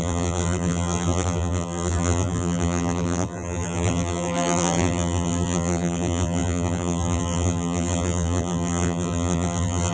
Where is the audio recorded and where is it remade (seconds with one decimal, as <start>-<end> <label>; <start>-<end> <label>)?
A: 0.0-9.9 remade